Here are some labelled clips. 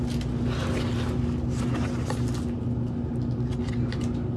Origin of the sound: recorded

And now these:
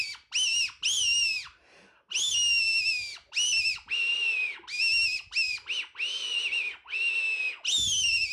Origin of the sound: recorded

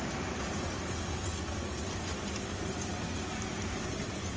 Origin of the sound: recorded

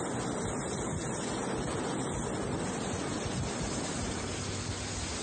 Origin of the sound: recorded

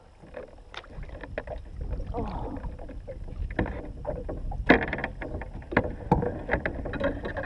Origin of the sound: recorded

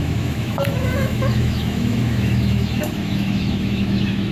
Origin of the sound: remade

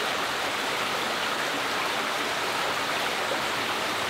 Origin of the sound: remade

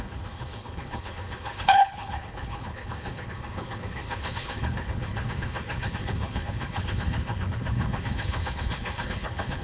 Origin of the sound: remade